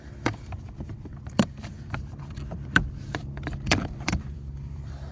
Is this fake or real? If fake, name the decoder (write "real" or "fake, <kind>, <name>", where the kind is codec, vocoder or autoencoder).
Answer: fake, vocoder, BigVGAN v2